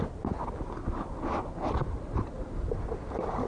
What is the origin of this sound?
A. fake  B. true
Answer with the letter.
B